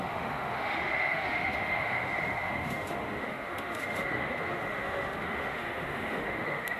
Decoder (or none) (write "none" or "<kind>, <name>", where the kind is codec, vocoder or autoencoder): autoencoder, DAC-VAE